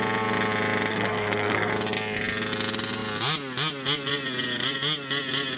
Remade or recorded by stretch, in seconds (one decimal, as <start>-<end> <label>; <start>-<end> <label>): 0.0-0.9 recorded; 0.9-1.7 remade; 1.7-5.6 recorded